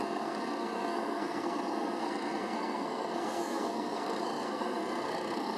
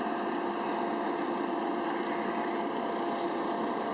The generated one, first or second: first